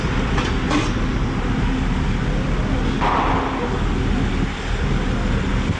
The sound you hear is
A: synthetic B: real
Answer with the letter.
B